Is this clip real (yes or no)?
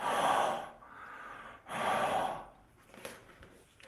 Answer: yes